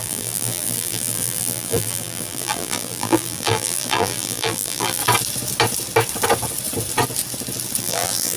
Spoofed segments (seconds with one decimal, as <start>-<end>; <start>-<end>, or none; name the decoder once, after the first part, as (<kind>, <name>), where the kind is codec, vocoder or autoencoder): 0.0-5.0 (vocoder, BigVGAN v2); 7.8-8.4